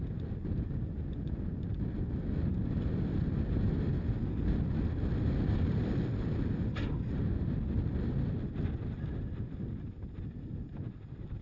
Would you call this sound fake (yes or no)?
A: no